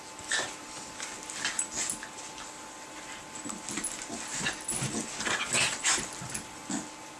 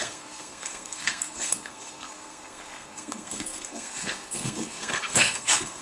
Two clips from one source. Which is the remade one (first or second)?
second